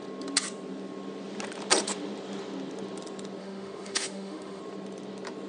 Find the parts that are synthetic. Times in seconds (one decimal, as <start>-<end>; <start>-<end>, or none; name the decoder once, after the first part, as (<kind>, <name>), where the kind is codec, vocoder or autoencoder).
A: 3.4-4.6 (autoencoder, DAC-VAE)